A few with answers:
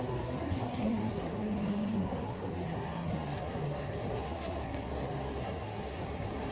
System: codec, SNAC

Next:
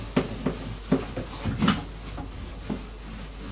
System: none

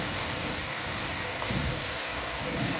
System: codec, DAC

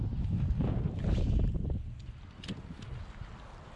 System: none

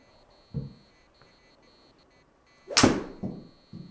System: none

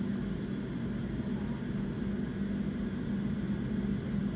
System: none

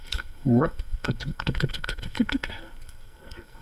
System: codec, SNAC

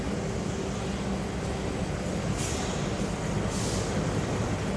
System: none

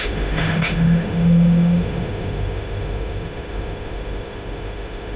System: autoencoder, DAC-VAE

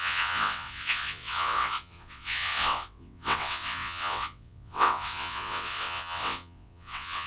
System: vocoder, WaveNeXt